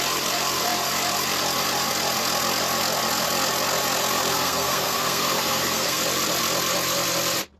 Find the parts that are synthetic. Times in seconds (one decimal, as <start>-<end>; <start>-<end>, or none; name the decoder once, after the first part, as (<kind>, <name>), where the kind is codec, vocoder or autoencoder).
4.3-6.0 (codec, SNAC)